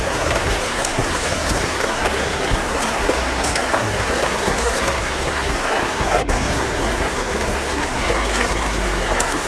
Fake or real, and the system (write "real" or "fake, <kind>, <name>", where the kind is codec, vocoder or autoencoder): fake, codec, SNAC